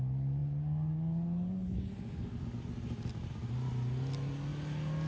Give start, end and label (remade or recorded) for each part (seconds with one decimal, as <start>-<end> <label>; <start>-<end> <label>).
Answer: 0.0-5.1 recorded